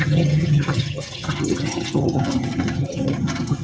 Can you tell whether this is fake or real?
fake